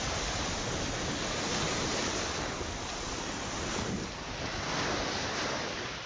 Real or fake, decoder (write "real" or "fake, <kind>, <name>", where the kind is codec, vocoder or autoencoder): real